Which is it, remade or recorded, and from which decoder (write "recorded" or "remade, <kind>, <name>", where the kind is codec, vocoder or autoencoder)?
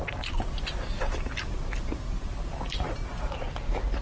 recorded